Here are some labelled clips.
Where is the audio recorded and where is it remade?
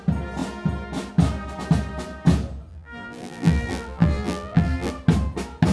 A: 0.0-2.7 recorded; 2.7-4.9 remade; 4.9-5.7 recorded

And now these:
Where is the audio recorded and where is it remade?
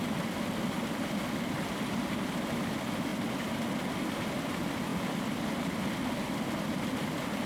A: 0.0-7.5 recorded